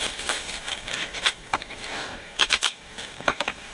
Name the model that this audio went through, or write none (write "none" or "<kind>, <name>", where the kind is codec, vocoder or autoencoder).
codec, DAC